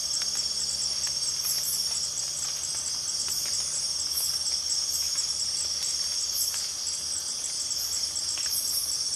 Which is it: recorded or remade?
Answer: recorded